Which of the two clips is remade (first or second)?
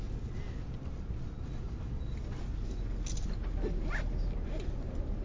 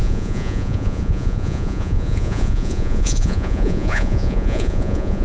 second